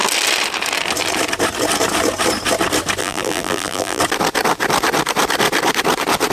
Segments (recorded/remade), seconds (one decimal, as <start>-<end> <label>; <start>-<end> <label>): 0.0-3.0 recorded; 3.0-4.0 remade; 4.0-6.3 recorded